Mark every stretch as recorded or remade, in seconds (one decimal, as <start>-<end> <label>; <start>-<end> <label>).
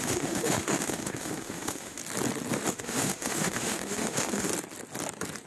0.0-2.0 remade; 2.0-2.7 recorded; 2.7-4.5 remade; 4.5-5.5 recorded